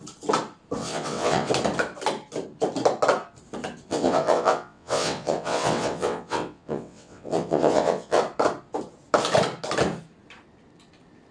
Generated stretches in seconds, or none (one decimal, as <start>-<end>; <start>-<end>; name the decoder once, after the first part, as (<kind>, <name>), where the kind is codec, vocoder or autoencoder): 0.8-1.5 (vocoder, WaveNeXt); 3.9-8.2